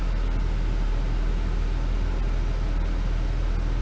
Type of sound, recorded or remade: recorded